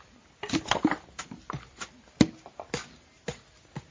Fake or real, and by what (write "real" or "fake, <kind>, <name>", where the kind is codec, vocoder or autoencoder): real